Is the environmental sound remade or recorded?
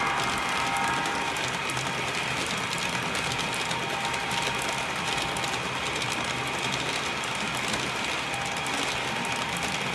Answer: recorded